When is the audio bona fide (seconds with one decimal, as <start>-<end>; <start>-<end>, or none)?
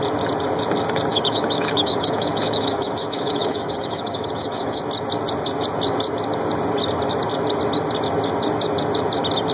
0.0-1.1; 4.8-9.5